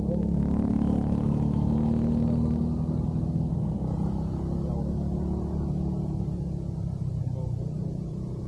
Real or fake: real